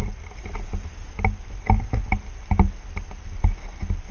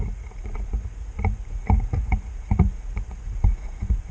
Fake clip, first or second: second